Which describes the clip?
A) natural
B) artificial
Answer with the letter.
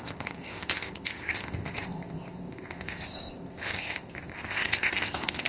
B